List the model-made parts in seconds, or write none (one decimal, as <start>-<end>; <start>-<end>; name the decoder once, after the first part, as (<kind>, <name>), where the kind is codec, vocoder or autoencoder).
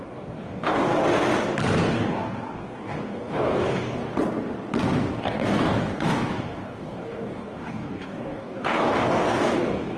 0.0-0.9 (codec, DAC); 1.8-4.1; 5.1-10.0